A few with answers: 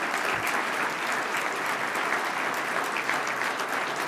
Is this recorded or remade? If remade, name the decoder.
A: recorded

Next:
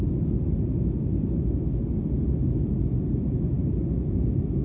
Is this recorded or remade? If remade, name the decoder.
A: recorded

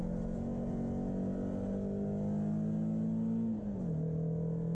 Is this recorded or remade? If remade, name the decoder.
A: recorded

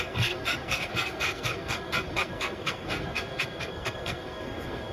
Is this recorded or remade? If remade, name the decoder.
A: remade, codec, SNAC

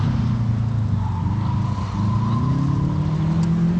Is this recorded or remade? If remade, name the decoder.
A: recorded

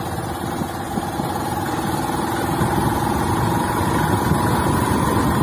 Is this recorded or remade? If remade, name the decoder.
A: recorded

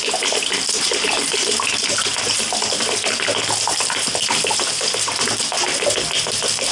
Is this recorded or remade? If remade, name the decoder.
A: recorded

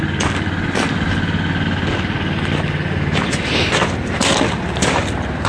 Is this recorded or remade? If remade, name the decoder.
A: recorded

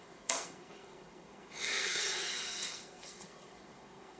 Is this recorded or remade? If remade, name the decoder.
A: remade, codec, SNAC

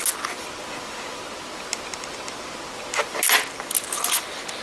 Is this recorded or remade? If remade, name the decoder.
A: recorded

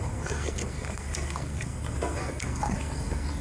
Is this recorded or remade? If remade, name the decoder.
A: remade, codec, SNAC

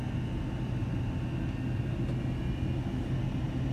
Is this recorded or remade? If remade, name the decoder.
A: recorded